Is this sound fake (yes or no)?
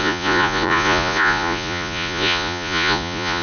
yes